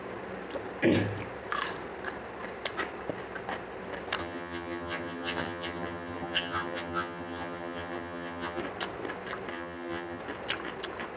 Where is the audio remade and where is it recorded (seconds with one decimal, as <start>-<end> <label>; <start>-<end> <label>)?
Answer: 0.0-4.2 recorded; 4.2-8.6 remade; 8.6-9.5 recorded; 9.5-10.2 remade; 10.2-11.2 recorded